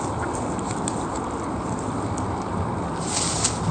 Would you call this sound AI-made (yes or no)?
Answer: no